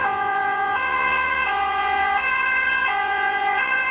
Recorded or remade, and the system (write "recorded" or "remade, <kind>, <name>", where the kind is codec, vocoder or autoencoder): remade, vocoder, Vocos